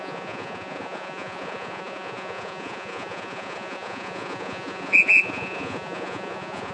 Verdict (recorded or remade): remade